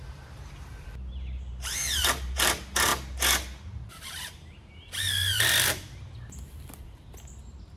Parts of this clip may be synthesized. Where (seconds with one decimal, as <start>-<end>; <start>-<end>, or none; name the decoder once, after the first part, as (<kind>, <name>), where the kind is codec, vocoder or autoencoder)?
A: 0.0-2.9 (vocoder, BigVGAN v2); 3.9-4.9